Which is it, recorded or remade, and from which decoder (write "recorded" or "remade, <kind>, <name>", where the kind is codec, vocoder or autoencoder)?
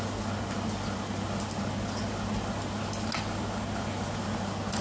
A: recorded